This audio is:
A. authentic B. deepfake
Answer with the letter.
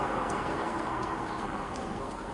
B